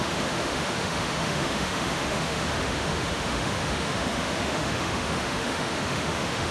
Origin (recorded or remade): remade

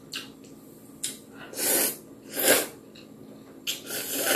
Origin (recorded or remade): recorded